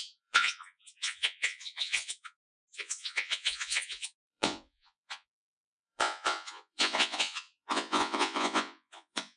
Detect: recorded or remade remade